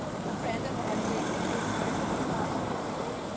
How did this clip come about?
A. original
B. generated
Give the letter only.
B